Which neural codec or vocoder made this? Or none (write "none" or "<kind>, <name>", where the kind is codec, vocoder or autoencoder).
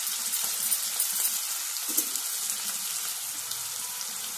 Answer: none